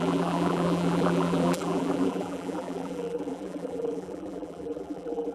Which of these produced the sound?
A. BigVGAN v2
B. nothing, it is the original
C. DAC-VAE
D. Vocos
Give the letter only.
A